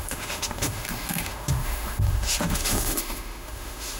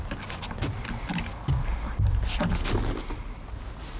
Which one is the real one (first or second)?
second